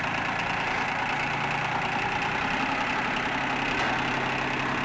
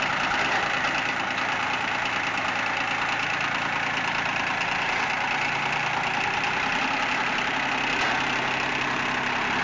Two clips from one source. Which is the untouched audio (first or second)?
first